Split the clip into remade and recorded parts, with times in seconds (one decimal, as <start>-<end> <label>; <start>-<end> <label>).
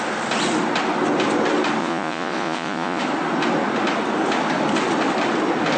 0.0-1.8 recorded; 1.8-3.0 remade; 3.0-5.8 recorded